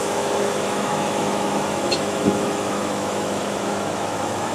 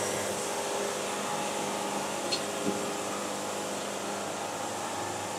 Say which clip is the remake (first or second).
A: first